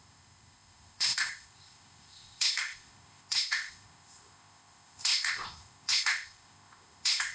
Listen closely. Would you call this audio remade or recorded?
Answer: remade